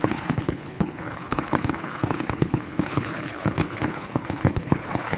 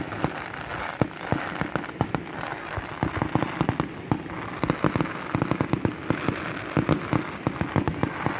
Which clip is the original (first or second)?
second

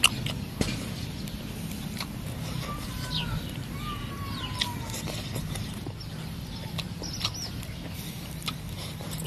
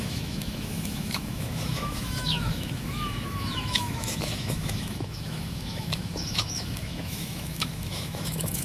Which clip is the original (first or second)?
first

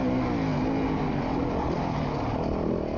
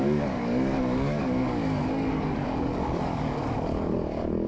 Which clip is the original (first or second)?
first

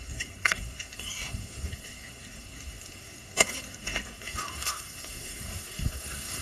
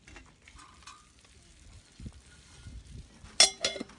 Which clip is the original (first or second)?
second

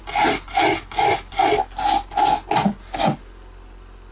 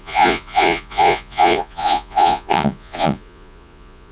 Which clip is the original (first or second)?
first